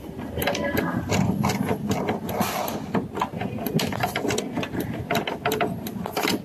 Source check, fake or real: real